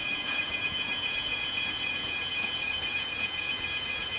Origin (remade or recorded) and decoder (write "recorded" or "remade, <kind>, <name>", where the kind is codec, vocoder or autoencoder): remade, vocoder, Vocos